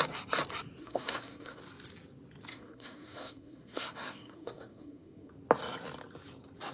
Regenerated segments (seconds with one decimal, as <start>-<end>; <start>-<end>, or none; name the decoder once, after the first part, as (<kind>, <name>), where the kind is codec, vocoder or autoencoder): 0.8-1.6 (codec, SNAC); 2.5-5.3